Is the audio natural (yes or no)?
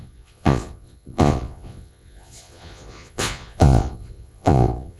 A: no